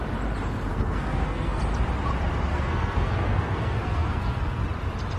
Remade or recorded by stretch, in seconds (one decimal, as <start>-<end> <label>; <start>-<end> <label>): 0.0-0.7 recorded; 0.7-1.6 remade; 1.6-2.5 recorded; 2.5-4.6 remade; 4.6-5.2 recorded

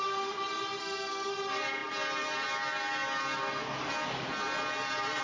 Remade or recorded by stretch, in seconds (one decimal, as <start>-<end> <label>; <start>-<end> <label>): 0.0-0.8 recorded; 0.8-1.3 remade; 1.3-5.2 recorded

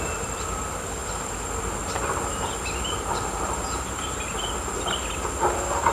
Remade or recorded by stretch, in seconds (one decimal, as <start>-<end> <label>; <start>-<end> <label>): 0.0-5.9 recorded

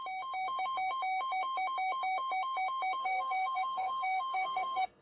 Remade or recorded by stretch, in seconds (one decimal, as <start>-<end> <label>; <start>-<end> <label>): 0.0-3.0 recorded; 3.0-5.0 remade

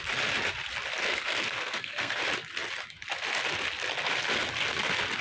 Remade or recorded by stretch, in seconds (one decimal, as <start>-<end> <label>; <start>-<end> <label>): 0.0-1.0 recorded; 1.0-2.2 remade; 2.2-5.2 recorded

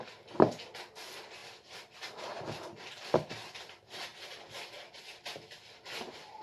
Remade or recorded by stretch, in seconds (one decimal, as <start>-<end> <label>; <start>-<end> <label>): 0.0-6.4 recorded

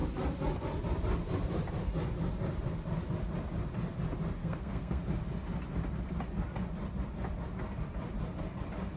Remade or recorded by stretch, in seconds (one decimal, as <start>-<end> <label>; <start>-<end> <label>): 0.0-4.4 recorded; 4.4-5.0 remade; 5.0-9.0 recorded